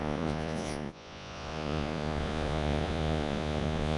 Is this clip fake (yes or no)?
yes